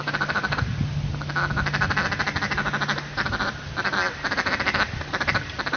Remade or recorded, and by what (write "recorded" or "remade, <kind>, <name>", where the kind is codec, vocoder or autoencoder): recorded